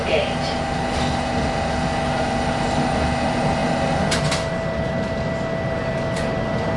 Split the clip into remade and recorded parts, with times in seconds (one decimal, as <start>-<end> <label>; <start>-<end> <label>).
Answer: 0.0-6.8 recorded